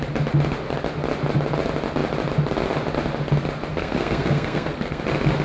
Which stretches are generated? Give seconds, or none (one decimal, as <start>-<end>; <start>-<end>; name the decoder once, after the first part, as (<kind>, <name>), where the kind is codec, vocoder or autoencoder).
3.7-5.0 (codec, SNAC)

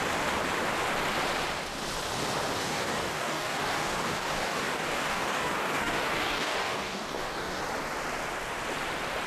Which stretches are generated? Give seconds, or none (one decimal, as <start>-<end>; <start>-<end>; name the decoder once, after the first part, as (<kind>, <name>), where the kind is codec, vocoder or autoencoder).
2.6-7.6 (codec, DAC)

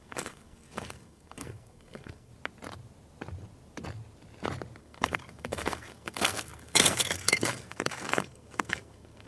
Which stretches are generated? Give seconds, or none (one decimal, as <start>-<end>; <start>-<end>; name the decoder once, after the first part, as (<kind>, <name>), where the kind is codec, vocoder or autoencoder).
0.0-2.3 (codec, SNAC); 4.8-9.3

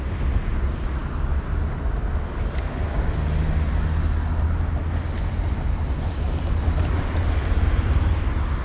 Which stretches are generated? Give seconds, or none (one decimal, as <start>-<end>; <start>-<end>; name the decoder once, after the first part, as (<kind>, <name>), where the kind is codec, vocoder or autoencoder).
none